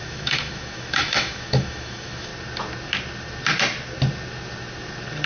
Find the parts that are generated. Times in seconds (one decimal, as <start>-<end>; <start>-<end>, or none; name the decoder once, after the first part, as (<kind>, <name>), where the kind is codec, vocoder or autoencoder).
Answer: 0.0-2.3 (autoencoder, DAC-VAE)